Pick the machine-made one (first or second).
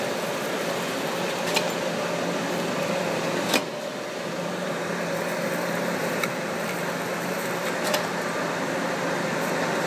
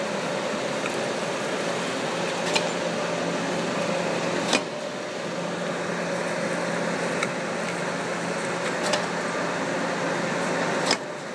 first